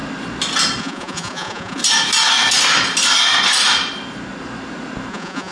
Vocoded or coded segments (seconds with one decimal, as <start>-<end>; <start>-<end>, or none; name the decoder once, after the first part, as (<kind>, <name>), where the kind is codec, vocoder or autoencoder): 0.8-1.8 (vocoder, Vocos); 5.1-5.5